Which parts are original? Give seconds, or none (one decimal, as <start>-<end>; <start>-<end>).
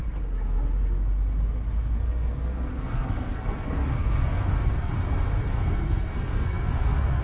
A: 0.0-2.0; 4.9-5.5